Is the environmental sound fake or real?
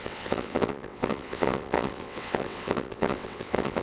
fake